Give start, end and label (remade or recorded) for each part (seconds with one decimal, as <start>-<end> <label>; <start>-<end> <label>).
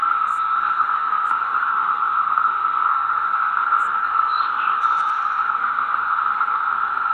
0.0-7.1 remade